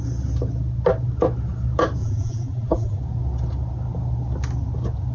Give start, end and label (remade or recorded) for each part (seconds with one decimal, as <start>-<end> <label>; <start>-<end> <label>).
0.0-2.0 recorded; 2.0-3.0 remade; 3.0-5.1 recorded